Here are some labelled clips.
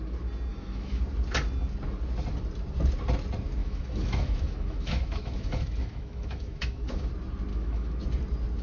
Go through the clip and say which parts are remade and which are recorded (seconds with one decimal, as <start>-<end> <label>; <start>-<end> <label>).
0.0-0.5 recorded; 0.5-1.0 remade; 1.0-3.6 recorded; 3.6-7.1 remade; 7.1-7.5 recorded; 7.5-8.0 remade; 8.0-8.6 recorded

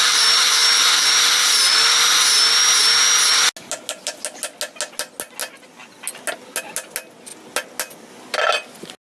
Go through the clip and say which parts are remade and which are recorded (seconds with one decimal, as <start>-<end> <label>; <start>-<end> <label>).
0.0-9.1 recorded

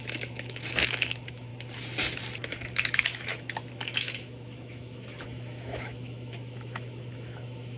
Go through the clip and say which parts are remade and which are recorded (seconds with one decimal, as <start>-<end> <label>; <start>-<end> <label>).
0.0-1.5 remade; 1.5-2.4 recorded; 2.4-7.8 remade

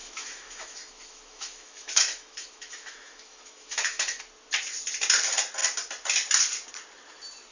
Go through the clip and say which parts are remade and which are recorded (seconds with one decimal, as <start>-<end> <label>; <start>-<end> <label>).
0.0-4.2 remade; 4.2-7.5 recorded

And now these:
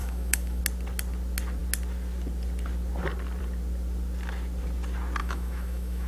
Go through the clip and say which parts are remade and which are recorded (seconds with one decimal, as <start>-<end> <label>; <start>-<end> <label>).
0.0-0.6 remade; 0.6-5.2 recorded; 5.2-6.1 remade